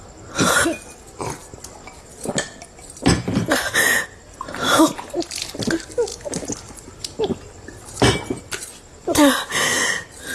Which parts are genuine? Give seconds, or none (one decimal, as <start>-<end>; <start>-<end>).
0.0-10.3